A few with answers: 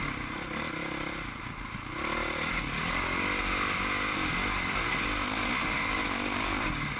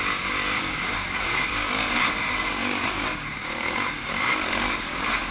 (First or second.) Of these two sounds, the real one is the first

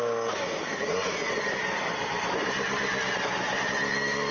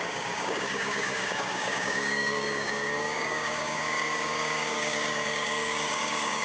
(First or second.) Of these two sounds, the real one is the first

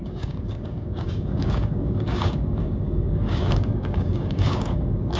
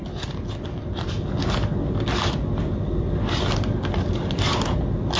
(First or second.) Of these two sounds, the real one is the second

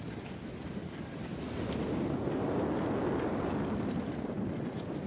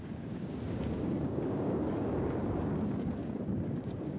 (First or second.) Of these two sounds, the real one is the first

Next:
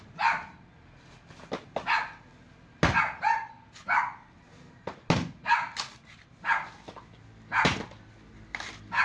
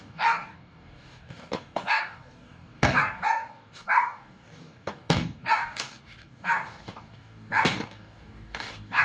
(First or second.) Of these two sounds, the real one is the first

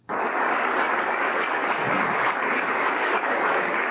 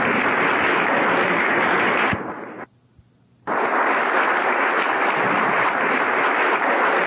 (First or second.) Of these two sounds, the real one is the second